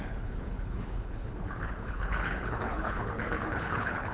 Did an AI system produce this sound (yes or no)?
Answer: yes